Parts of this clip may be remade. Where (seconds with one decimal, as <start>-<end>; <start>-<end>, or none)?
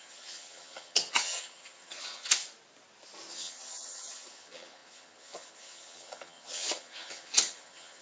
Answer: 0.0-2.4; 3.3-8.0